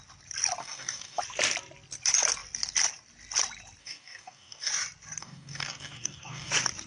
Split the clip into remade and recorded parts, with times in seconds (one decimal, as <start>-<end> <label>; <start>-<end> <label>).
0.0-0.6 recorded; 0.6-1.2 remade; 1.2-3.8 recorded; 3.8-4.7 remade; 4.7-5.2 recorded; 5.2-6.5 remade; 6.5-6.9 recorded